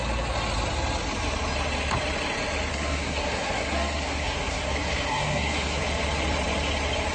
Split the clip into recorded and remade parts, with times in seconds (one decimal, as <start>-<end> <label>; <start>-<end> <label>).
0.0-2.7 recorded; 2.7-5.8 remade; 5.8-7.1 recorded